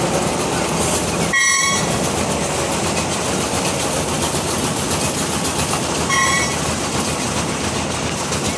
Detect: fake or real real